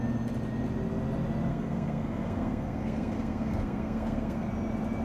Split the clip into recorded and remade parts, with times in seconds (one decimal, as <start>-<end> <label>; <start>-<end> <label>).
0.0-1.5 recorded; 1.5-4.5 remade; 4.5-5.0 recorded